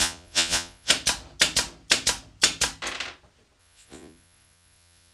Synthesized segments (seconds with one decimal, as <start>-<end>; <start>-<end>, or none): 0.0-0.9; 3.6-5.1